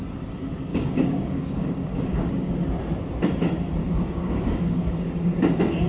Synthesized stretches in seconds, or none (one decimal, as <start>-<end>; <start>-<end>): 0.7-2.5; 3.8-5.9